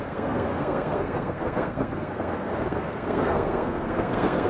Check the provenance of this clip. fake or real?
fake